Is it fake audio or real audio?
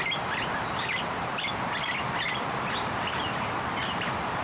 real